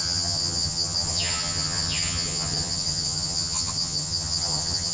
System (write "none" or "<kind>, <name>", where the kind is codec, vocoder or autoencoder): vocoder, HiFi-GAN